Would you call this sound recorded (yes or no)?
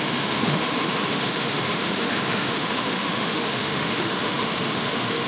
no